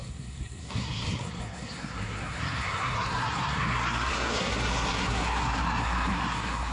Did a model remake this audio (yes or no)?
yes